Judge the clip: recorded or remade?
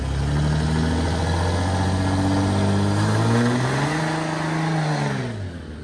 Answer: recorded